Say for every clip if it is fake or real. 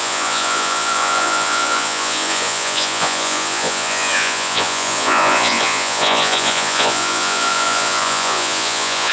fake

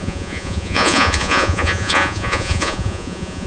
fake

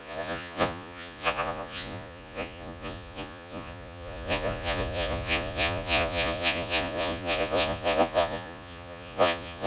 fake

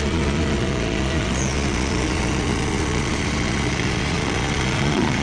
fake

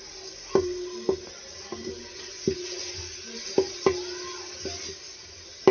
real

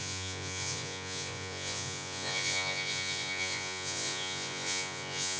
fake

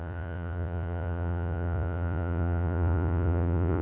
fake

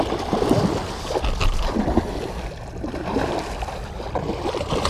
real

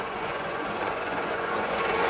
fake